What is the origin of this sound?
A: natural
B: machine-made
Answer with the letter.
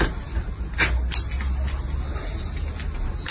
A